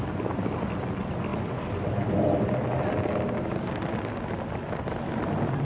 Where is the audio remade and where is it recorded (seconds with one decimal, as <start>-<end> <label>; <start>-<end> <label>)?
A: 0.0-5.6 recorded